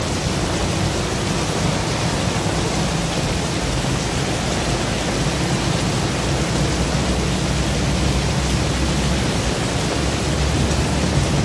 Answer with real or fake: real